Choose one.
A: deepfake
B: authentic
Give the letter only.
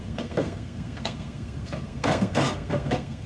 A